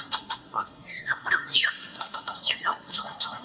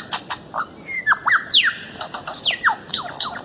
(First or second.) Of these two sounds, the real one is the second